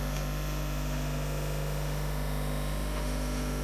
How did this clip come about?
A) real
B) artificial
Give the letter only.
B